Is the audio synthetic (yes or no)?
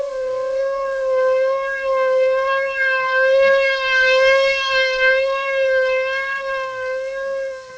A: yes